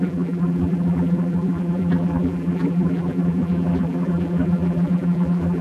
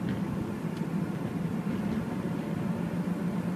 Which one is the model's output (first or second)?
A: first